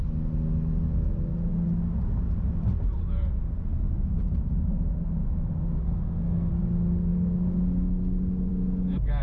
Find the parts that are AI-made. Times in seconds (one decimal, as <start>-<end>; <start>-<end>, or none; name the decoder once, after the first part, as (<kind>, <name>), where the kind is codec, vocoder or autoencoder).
5.8-6.5 (codec, SNAC)

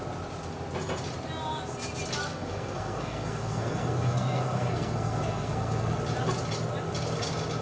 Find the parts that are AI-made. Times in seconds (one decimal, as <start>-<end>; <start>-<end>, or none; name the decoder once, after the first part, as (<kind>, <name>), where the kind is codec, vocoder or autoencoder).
2.2-6.0 (codec, SNAC)

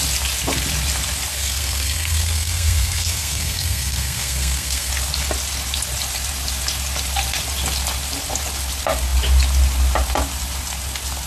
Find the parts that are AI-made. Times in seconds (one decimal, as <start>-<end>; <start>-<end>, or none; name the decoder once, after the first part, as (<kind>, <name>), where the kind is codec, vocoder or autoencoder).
1.3-4.9 (codec, SNAC)

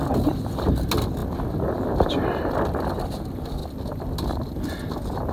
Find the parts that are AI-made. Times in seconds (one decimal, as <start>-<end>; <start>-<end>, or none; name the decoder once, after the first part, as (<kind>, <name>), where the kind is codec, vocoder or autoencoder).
none

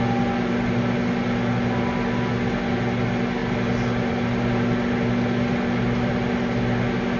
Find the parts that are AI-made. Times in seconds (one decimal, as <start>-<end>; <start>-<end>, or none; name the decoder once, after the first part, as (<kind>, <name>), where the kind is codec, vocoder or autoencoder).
none

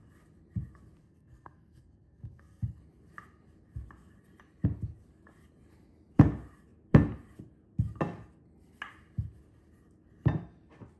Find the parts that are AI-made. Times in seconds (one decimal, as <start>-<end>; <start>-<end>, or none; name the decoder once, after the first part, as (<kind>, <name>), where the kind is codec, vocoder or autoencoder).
1.0-2.8 (codec, SNAC)

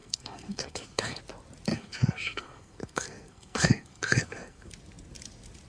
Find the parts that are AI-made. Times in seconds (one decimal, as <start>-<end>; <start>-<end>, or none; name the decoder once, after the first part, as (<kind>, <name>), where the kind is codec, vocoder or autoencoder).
0.0-1.2 (codec, SNAC); 1.7-4.7

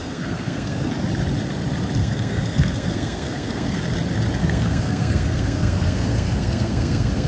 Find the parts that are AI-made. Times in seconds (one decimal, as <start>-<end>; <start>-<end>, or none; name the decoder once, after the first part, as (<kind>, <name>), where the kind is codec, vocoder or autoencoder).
0.0-0.9 (codec, SNAC); 2.0-3.8; 4.4-7.3